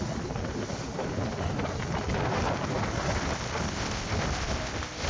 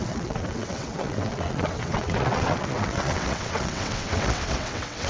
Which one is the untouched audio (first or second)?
first